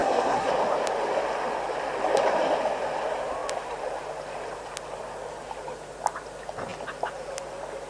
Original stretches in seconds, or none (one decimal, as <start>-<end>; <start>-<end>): 0.5-7.9